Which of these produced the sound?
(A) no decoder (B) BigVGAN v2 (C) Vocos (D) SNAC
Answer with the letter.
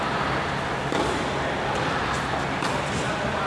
B